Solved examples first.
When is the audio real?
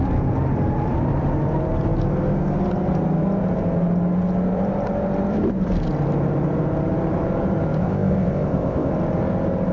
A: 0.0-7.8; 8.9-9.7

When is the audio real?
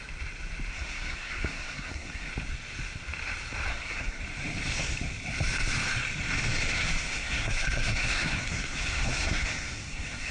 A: 0.0-0.7; 2.3-3.7; 4.2-6.7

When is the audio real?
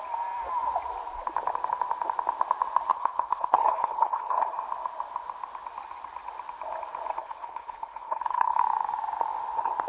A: 0.0-2.9; 4.4-7.2; 8.6-9.9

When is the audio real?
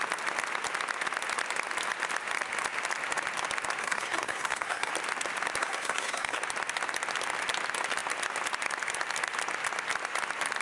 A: 0.0-3.8; 4.9-5.6; 6.4-10.6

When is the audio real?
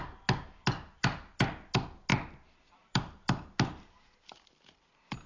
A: 0.0-5.3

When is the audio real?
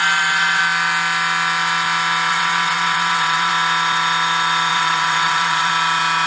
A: 0.6-2.3; 3.5-4.7; 5.7-6.3